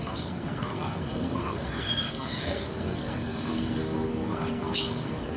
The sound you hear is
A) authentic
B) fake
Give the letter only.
B